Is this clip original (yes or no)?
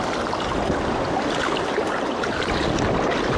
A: yes